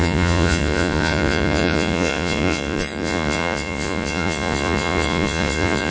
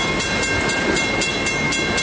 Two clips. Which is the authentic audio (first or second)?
second